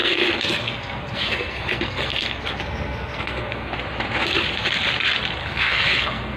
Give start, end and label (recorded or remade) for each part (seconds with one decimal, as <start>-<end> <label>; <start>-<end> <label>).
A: 0.0-3.8 remade; 3.8-5.4 recorded; 5.4-6.4 remade